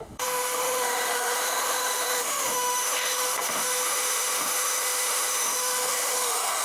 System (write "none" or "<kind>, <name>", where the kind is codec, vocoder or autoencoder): autoencoder, DAC-VAE